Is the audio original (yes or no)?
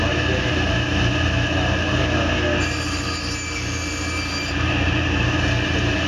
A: yes